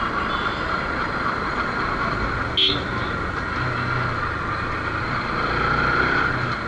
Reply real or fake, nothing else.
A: real